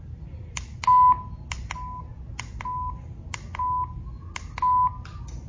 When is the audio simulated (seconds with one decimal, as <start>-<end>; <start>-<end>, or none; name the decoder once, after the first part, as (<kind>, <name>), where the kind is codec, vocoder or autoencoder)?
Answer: none